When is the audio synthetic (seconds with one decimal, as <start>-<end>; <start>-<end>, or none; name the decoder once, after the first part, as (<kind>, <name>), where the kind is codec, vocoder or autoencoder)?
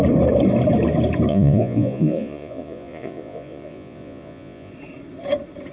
1.3-4.7 (vocoder, Vocos)